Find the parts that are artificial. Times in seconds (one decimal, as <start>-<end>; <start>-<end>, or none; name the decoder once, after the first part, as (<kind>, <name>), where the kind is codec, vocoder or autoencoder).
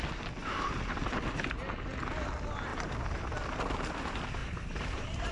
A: 0.4-1.2 (vocoder, BigVGAN v2); 2.7-3.2; 4.4-5.3